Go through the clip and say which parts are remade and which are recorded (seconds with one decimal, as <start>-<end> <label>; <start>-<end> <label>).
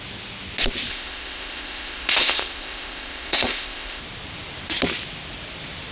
0.0-0.9 recorded; 0.9-4.0 remade; 4.0-5.9 recorded